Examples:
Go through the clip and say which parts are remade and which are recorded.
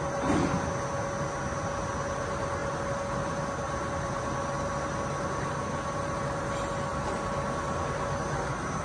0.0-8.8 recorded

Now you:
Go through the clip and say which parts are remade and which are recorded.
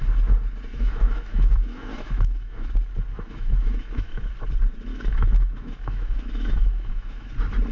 0.0-0.7 recorded; 0.7-2.7 remade; 2.7-3.1 recorded; 3.1-4.3 remade; 4.3-4.9 recorded; 4.9-7.3 remade; 7.3-7.7 recorded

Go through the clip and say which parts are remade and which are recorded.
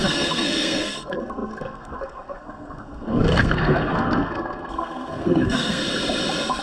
0.0-5.8 remade; 5.8-6.6 recorded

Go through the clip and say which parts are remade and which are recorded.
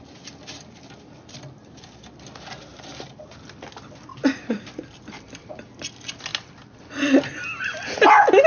0.0-4.1 recorded; 4.1-5.7 remade; 5.7-6.3 recorded; 6.3-6.8 remade; 6.8-8.5 recorded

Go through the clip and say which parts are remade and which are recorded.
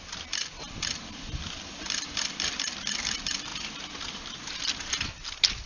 0.0-5.7 recorded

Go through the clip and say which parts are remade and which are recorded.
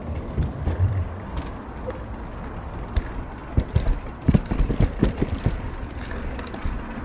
0.0-1.2 remade; 1.2-3.4 recorded; 3.4-5.7 remade; 5.7-7.0 recorded